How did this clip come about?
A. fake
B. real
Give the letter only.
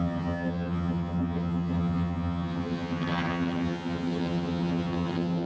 A